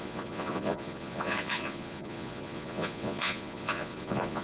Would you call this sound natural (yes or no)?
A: no